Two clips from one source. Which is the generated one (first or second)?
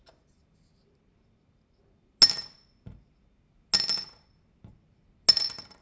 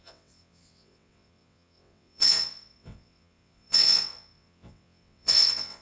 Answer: second